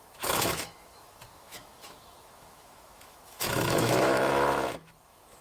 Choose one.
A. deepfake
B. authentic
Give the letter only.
A